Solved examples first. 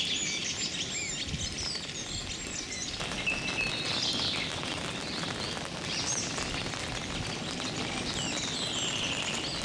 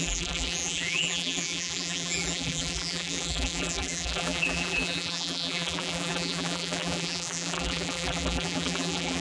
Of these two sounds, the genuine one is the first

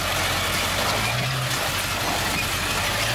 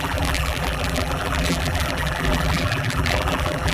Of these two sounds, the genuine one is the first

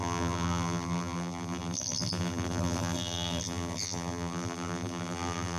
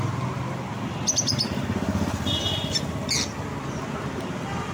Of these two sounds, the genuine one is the second